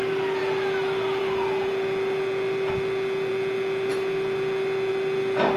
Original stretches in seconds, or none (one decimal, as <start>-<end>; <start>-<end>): 0.0-5.6